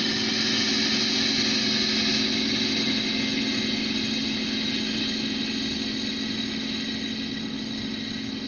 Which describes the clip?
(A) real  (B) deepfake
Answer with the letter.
A